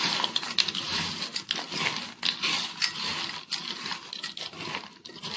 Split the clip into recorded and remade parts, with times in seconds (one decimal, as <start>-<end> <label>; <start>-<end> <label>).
0.0-5.4 recorded